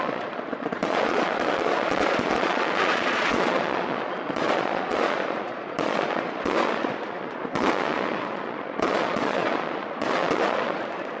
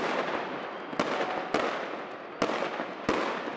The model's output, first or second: first